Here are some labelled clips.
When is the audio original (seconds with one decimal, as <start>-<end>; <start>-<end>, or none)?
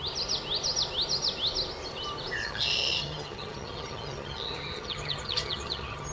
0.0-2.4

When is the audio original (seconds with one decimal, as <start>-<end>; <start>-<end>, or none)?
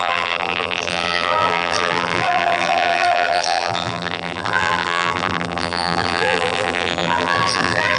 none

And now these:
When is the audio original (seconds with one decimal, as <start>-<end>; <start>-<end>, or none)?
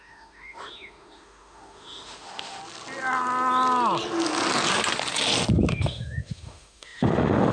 2.6-5.7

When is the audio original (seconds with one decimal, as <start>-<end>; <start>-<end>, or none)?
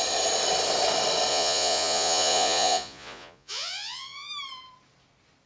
0.0-1.3; 4.3-5.5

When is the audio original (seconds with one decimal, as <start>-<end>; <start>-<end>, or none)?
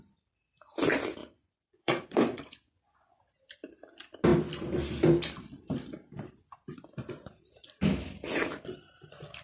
0.0-1.2; 3.2-9.4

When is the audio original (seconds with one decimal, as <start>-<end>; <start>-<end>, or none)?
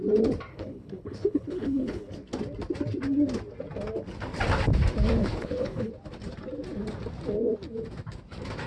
0.0-0.5; 2.1-5.2; 5.9-8.7